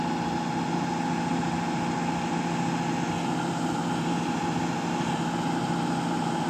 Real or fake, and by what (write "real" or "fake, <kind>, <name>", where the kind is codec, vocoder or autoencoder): real